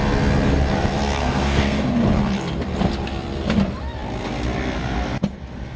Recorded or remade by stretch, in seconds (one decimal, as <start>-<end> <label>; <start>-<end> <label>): 0.0-1.2 recorded; 1.2-1.9 remade; 1.9-5.8 recorded